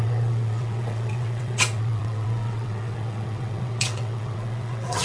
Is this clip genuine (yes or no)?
no